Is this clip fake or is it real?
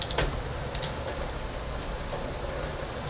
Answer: real